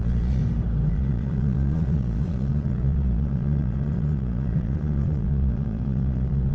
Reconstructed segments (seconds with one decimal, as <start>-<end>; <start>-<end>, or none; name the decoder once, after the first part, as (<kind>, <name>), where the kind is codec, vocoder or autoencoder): 0.0-0.4 (vocoder, Vocos); 0.9-6.5